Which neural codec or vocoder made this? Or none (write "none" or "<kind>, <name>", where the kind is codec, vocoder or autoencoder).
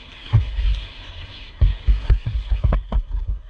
codec, SNAC